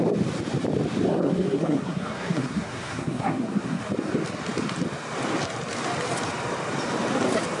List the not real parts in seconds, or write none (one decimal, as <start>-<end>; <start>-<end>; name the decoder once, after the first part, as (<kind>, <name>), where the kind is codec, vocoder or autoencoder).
1.1-3.8 (codec, SNAC)